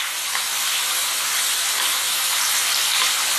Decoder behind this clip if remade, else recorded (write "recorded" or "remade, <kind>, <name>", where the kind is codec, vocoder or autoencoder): recorded